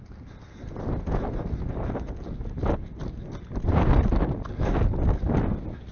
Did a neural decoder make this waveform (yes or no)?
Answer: no